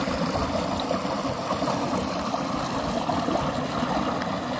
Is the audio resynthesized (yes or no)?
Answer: no